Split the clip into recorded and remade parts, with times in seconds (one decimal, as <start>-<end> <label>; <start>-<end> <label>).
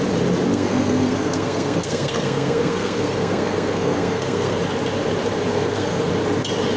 0.0-0.5 recorded; 0.5-4.6 remade; 4.6-5.5 recorded; 5.5-6.1 remade; 6.1-6.8 recorded